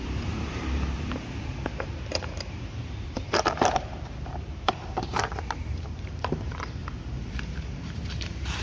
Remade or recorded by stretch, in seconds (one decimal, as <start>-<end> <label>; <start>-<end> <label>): 0.0-6.8 remade; 6.8-7.3 recorded; 7.3-8.6 remade